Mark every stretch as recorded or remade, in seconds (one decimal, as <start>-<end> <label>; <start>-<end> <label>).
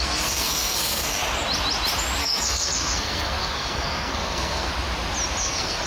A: 0.0-1.2 remade; 1.2-2.2 recorded; 2.2-4.7 remade; 4.7-5.4 recorded; 5.4-5.9 remade